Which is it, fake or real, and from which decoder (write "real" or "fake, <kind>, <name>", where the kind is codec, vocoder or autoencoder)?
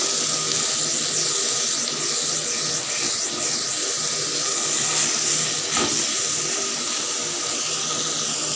real